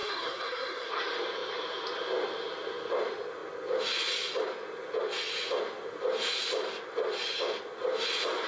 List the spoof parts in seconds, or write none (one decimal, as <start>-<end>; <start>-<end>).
0.0-0.9